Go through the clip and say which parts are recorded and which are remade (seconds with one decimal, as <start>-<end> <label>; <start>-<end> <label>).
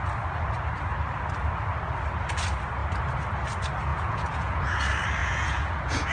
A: 0.0-3.9 recorded; 3.9-4.8 remade; 4.8-5.2 recorded; 5.2-6.1 remade